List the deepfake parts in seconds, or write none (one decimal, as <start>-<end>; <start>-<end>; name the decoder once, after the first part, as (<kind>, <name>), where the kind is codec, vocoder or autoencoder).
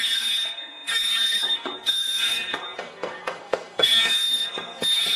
0.0-5.2 (codec, SNAC)